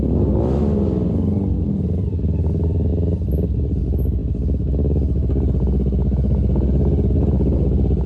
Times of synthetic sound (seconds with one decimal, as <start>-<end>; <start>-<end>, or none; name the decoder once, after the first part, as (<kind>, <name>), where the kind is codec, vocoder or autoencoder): none